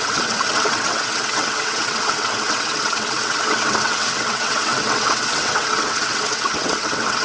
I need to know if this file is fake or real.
fake